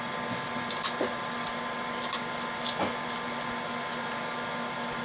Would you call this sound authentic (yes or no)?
yes